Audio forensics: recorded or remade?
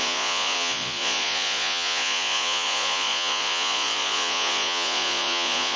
remade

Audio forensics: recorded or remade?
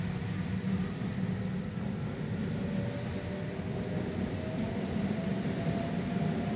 recorded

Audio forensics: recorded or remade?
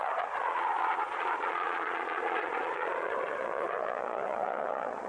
remade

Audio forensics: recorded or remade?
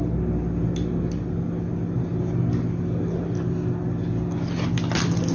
recorded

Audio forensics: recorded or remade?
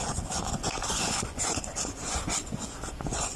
remade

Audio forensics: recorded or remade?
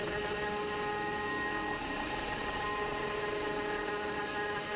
recorded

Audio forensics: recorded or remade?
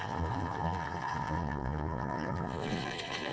remade